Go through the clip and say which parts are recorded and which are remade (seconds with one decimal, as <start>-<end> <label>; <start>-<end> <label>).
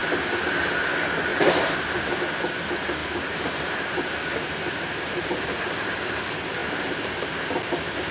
0.0-1.3 recorded; 1.3-2.1 remade; 2.1-3.0 recorded; 3.0-5.6 remade; 5.6-6.6 recorded; 6.6-7.3 remade; 7.3-8.1 recorded